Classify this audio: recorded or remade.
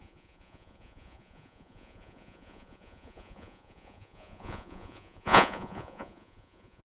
remade